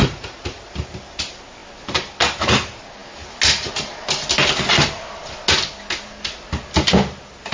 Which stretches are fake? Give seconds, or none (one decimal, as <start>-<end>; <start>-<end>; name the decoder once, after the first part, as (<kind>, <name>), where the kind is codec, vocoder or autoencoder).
0.0-0.6 (vocoder, Vocos)